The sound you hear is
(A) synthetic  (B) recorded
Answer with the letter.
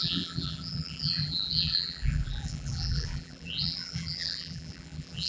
A